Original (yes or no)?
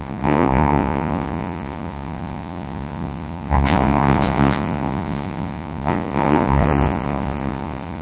no